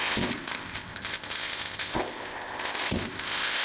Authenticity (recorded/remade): remade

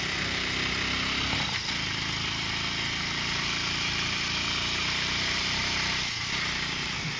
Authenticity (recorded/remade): recorded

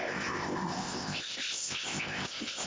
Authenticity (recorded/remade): remade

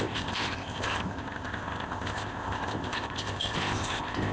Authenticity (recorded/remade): remade